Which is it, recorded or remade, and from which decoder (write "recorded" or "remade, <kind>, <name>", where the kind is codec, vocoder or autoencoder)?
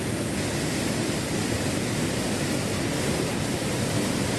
recorded